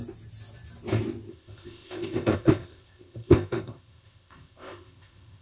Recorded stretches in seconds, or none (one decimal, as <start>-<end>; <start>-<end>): 0.0-1.3